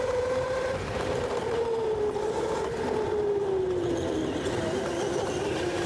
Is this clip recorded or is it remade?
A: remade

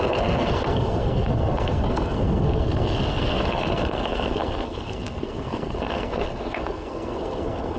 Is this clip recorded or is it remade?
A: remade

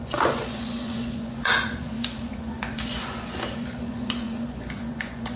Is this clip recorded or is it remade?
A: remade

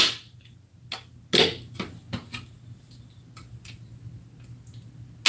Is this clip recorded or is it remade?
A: recorded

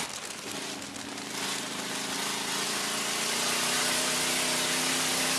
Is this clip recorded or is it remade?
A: recorded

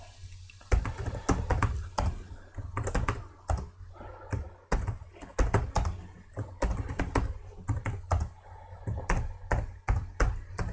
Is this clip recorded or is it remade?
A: recorded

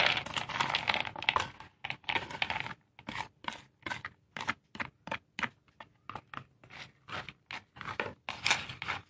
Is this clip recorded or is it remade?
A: recorded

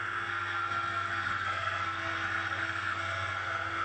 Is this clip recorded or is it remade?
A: remade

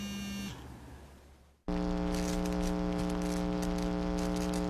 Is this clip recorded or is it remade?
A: recorded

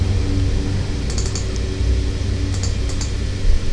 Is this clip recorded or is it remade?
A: recorded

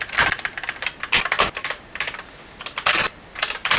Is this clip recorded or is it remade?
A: recorded